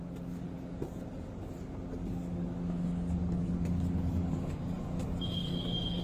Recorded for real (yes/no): no